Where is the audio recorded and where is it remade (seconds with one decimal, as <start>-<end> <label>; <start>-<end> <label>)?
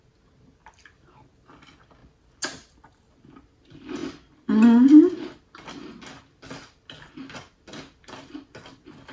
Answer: 0.0-9.1 recorded